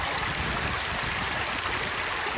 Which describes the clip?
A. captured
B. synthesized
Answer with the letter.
A